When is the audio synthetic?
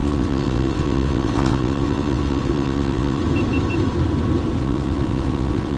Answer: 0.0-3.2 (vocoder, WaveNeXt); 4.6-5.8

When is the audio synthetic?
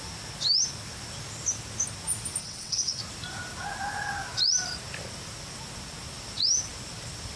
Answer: 2.4-3.0 (vocoder, WaveNeXt)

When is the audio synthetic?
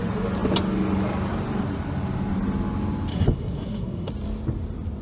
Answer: 3.1-4.1 (codec, SNAC)